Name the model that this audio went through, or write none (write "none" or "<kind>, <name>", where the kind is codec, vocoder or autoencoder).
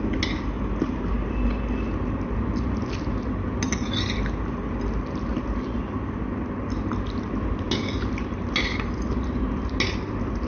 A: none